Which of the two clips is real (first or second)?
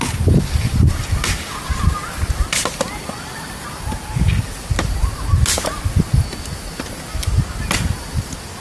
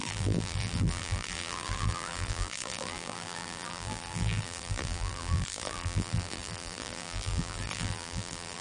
first